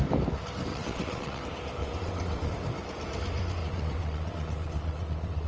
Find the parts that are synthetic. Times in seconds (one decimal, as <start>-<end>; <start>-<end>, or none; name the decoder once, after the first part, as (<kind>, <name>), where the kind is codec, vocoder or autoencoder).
0.7-1.4 (vocoder, WaveNeXt); 1.8-2.5; 3.6-5.5